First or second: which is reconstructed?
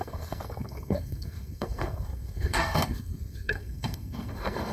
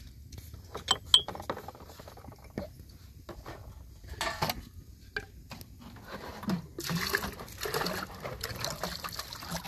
first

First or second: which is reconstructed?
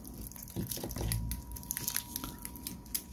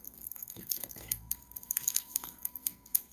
second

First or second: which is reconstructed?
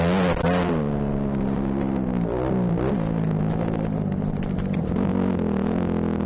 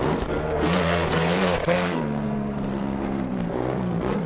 second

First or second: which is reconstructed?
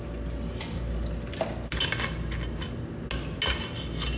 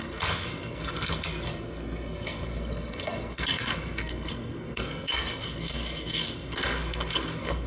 second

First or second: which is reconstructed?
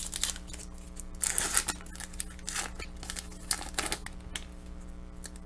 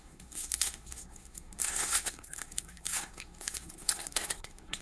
second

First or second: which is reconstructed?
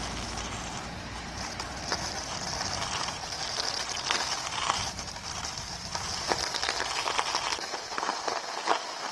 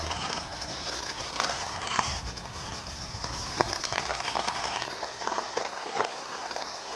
second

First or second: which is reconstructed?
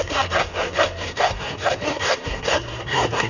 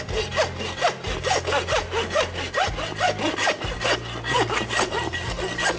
first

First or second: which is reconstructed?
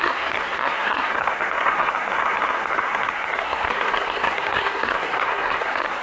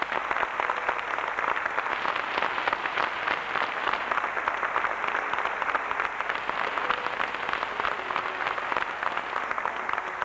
first